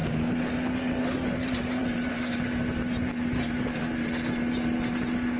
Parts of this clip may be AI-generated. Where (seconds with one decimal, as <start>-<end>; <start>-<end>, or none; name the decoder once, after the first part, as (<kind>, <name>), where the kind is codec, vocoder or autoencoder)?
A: none